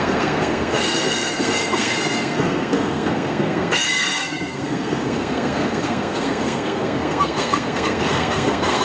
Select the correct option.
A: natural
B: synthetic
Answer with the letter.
B